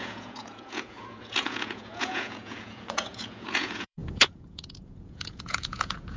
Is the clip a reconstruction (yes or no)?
yes